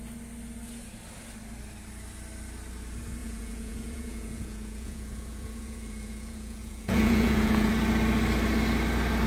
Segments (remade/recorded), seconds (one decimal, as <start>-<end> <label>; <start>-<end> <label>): 0.0-3.2 recorded; 3.2-7.7 remade; 7.7-9.3 recorded